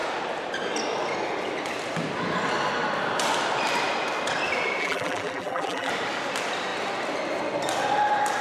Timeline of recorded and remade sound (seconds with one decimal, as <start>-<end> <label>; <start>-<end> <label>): 0.0-4.8 recorded; 4.8-5.9 remade; 5.9-8.4 recorded